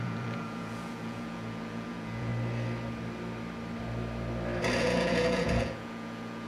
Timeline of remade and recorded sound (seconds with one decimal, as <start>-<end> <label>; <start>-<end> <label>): 0.0-2.3 remade; 2.3-4.8 recorded; 4.8-6.5 remade